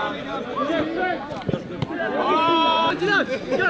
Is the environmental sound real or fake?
real